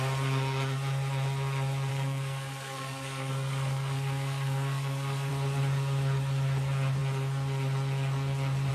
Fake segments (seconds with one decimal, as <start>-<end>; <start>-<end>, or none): 1.9-5.3